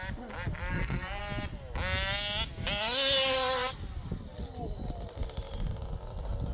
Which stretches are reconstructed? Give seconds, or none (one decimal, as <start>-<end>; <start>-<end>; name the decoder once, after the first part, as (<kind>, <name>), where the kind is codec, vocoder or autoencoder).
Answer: 0.7-1.2 (codec, SNAC)

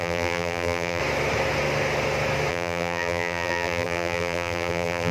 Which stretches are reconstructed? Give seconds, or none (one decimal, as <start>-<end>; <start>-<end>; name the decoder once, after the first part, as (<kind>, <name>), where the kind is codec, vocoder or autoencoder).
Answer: 0.0-1.0 (vocoder, BigVGAN v2); 2.5-5.1

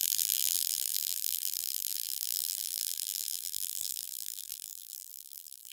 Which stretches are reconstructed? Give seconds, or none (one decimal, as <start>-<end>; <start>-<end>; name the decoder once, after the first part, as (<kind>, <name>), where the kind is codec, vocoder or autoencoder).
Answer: 0.0-5.7 (vocoder, BigVGAN v2)

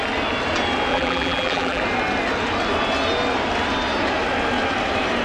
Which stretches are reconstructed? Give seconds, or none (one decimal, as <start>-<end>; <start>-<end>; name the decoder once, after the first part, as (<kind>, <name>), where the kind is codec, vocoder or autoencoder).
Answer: 0.9-1.8 (vocoder, BigVGAN v2)

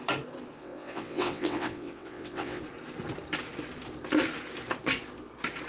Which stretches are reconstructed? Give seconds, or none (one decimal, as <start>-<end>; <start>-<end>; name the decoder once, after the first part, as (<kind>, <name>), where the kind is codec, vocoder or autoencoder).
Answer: 0.6-2.6 (vocoder, WaveNeXt)